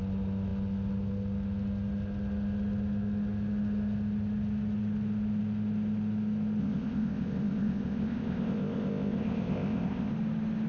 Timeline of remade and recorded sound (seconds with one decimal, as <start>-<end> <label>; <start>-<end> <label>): 0.0-6.6 recorded; 6.6-10.1 remade; 10.1-10.7 recorded